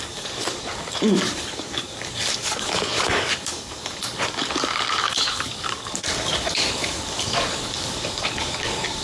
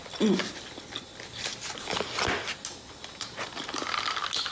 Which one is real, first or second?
second